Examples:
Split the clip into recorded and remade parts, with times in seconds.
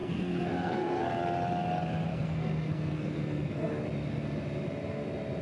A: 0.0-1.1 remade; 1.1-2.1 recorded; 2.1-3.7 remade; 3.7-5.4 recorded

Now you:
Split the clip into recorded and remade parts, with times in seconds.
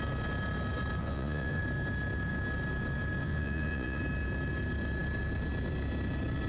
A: 0.0-1.0 recorded; 1.0-1.6 remade; 1.6-3.2 recorded; 3.2-4.0 remade; 4.0-6.5 recorded